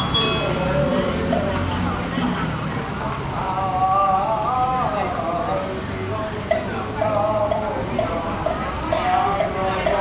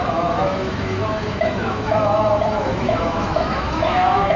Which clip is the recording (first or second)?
first